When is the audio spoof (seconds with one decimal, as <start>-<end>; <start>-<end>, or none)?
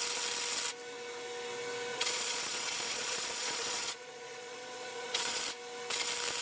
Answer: 1.9-5.4